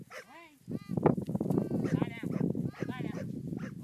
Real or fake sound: real